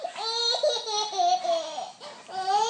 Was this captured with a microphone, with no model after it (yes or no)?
yes